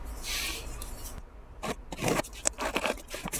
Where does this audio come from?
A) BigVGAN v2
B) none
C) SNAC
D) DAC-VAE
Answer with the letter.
B